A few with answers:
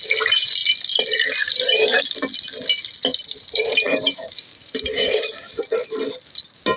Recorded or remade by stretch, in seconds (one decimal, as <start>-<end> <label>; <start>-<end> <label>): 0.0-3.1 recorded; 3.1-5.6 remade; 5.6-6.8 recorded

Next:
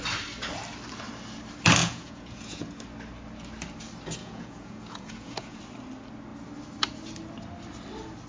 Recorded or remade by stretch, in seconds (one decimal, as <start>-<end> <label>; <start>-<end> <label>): 0.0-1.8 recorded; 1.8-2.8 remade; 2.8-4.2 recorded; 4.2-5.6 remade; 5.6-8.3 recorded

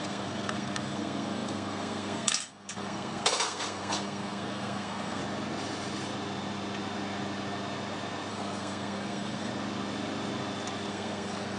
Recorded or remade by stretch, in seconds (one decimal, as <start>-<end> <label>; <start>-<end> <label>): 0.0-5.2 remade; 5.2-8.3 recorded; 8.3-9.5 remade; 9.5-10.9 recorded; 10.9-11.6 remade

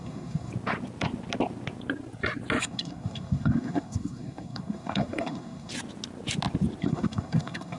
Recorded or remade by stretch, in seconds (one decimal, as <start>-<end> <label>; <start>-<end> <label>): 0.0-0.5 remade; 0.5-2.6 recorded; 2.6-5.7 remade; 5.7-6.8 recorded; 6.8-7.8 remade

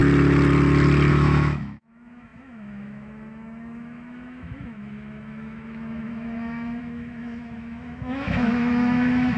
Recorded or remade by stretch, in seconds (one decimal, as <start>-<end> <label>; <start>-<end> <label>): 0.0-1.1 recorded; 1.1-9.4 remade